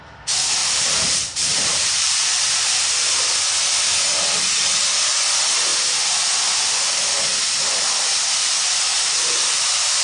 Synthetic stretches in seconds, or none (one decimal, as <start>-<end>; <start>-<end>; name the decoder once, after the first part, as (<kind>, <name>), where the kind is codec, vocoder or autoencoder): 0.6-2.8 (vocoder, BigVGAN v2); 8.9-10.0